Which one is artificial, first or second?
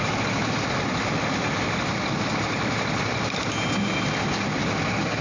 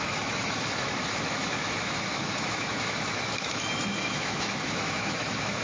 second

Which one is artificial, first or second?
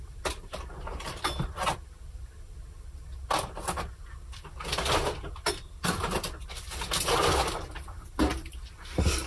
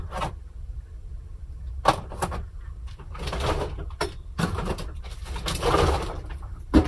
second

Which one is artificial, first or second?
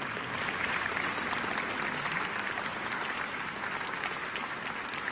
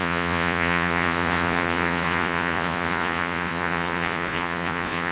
second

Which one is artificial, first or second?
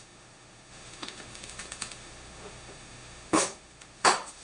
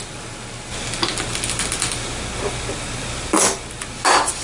first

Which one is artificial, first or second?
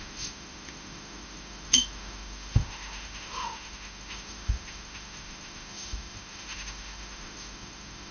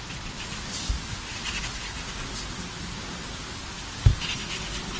first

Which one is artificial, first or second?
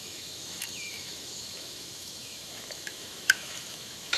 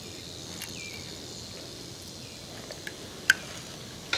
first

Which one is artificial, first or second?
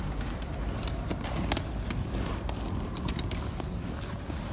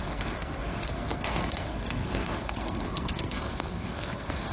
second